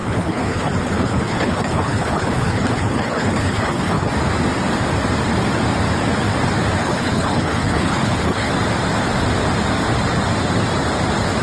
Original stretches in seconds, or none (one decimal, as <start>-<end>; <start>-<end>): 4.1-6.8; 8.5-11.4